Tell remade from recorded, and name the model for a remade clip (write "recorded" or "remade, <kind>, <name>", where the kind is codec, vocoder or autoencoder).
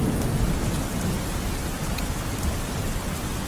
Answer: recorded